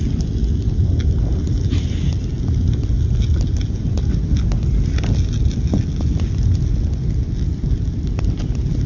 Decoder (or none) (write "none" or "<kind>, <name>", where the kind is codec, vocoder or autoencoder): none